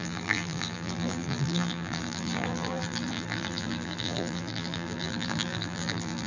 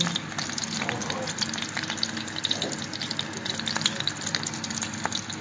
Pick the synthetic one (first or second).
first